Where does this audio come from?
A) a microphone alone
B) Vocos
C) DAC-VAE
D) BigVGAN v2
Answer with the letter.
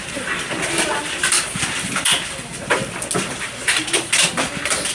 A